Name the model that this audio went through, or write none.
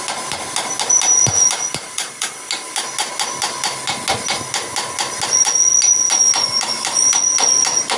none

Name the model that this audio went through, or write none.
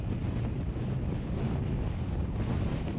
none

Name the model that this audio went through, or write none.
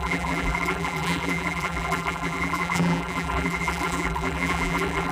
vocoder, BigVGAN v2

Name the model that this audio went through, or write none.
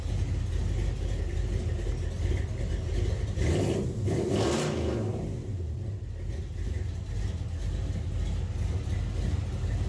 none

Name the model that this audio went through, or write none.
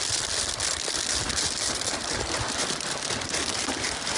vocoder, BigVGAN v2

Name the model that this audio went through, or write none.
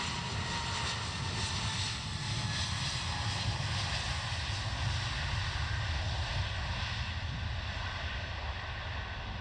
none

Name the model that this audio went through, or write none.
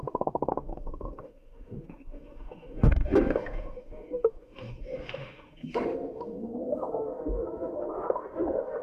autoencoder, DAC-VAE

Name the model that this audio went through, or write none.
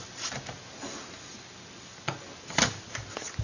none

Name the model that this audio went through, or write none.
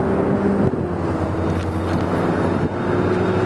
none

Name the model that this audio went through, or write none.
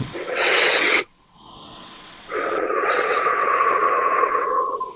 vocoder, WaveNeXt